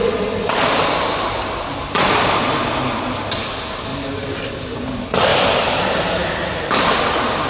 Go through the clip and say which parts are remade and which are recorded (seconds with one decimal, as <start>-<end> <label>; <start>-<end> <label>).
0.0-7.5 remade